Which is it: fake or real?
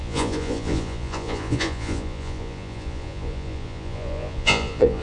fake